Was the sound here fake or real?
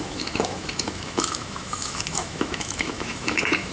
fake